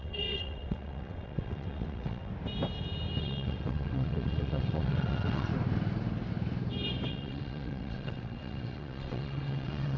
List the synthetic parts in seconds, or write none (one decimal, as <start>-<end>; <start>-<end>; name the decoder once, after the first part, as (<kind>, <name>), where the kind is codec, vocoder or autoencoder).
0.0-2.3 (vocoder, WaveNeXt); 3.2-5.5; 7.1-10.0